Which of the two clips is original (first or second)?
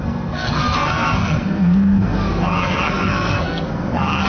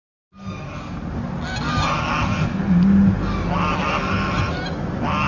second